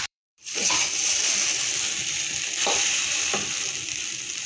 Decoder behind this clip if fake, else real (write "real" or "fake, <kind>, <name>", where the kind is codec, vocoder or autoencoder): fake, vocoder, BigVGAN v2